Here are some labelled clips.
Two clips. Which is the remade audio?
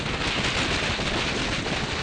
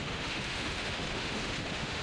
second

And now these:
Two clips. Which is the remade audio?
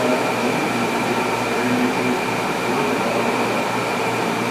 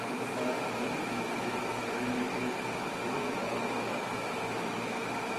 second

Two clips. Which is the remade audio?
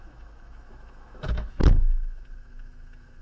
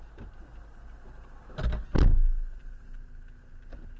first